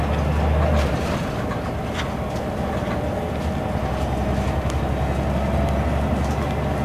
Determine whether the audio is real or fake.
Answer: real